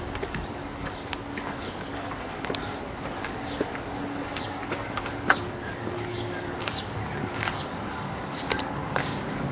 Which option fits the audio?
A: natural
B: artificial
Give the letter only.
B